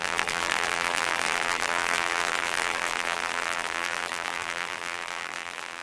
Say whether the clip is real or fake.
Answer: fake